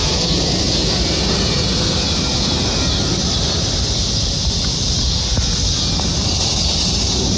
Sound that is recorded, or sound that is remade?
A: recorded